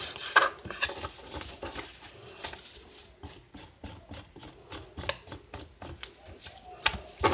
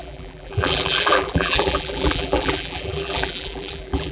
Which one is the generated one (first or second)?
second